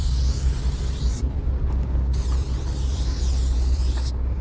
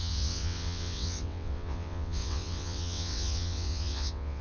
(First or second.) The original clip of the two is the first